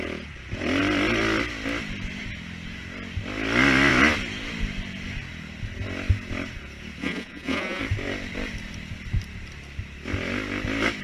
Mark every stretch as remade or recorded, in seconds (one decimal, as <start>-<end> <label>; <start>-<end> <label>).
0.0-7.0 recorded; 7.0-7.8 remade; 7.8-11.0 recorded

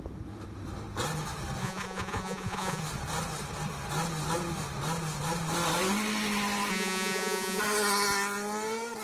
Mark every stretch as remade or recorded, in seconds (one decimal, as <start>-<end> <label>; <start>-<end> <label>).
0.0-1.6 recorded; 1.6-2.8 remade; 2.8-6.7 recorded; 6.7-7.6 remade; 7.6-9.0 recorded

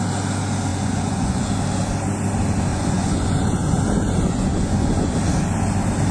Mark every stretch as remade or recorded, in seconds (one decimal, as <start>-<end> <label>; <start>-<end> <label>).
0.0-0.7 recorded; 0.7-1.5 remade; 1.5-2.7 recorded; 2.7-5.1 remade; 5.1-6.1 recorded

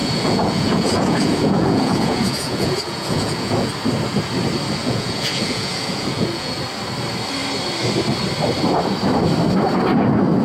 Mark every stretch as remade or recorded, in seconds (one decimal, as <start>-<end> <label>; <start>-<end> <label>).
0.0-3.7 remade; 3.7-4.8 recorded; 4.8-6.6 remade; 6.6-10.4 recorded

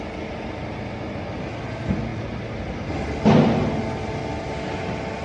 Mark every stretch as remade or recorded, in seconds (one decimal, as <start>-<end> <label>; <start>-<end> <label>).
0.0-5.2 recorded

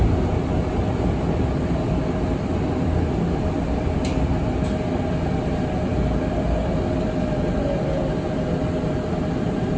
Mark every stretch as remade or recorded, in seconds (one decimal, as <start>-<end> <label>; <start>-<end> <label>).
0.0-9.8 recorded

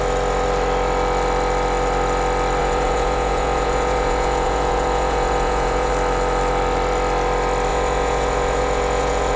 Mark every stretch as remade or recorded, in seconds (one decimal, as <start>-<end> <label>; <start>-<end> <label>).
0.0-2.6 recorded; 2.6-5.9 remade; 5.9-7.7 recorded; 7.7-9.4 remade

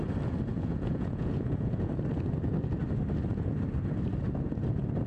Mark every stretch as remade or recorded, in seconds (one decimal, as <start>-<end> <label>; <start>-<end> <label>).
0.0-0.5 recorded; 0.5-1.9 remade; 1.9-5.1 recorded